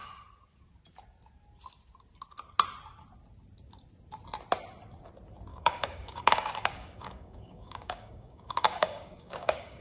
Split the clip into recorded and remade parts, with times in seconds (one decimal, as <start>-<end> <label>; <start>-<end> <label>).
0.0-5.5 recorded; 5.5-9.8 remade